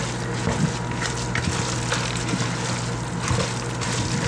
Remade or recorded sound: recorded